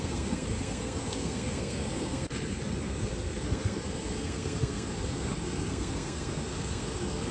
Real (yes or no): no